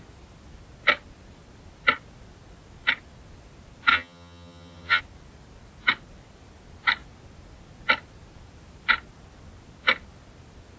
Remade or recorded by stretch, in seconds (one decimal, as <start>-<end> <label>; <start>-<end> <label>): 0.0-3.9 recorded; 3.9-5.0 remade; 5.0-10.8 recorded